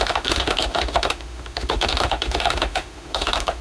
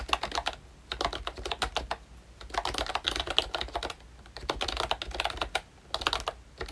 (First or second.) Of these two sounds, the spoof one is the first